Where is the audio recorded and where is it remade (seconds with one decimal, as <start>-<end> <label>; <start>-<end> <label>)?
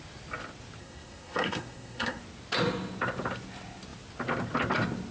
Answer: 0.0-0.8 recorded; 0.8-2.2 remade; 2.2-5.1 recorded